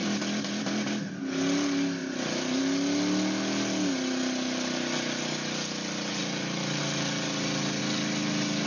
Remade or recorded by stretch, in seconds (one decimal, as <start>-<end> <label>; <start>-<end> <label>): 0.0-1.0 remade; 1.0-2.0 recorded; 2.0-2.6 remade; 2.6-6.2 recorded; 6.2-6.8 remade; 6.8-8.7 recorded